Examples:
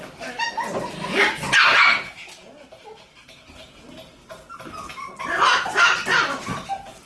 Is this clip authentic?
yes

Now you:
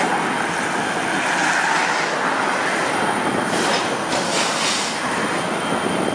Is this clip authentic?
yes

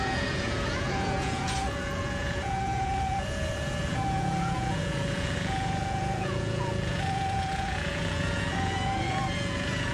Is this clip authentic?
no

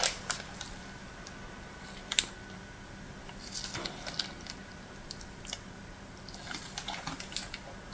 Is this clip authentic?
yes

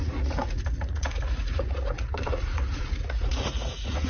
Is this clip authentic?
no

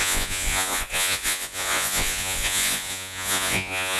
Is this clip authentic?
no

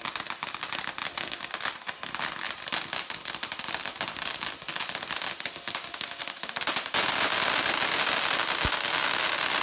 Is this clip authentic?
yes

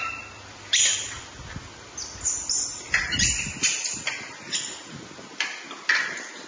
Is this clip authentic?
yes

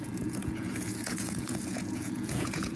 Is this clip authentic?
no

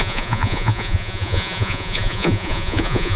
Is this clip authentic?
no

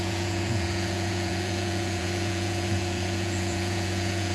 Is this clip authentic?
no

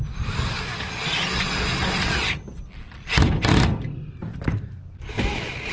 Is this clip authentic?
yes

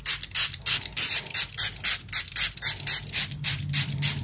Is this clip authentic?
yes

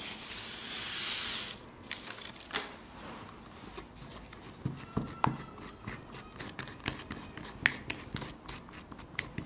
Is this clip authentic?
yes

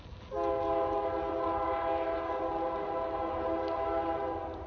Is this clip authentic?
yes